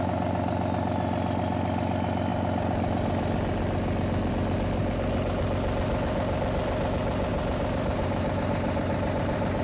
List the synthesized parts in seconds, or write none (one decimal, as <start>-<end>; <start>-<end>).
4.8-5.4; 7.3-9.6